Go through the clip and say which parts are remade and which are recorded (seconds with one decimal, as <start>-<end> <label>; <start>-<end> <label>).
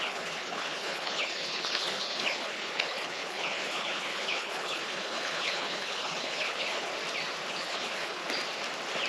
0.0-6.9 remade; 6.9-7.5 recorded; 7.5-8.2 remade; 8.2-9.1 recorded